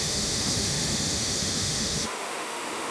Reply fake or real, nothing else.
fake